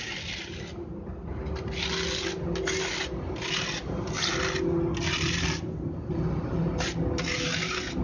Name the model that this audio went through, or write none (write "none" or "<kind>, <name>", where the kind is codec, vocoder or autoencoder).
none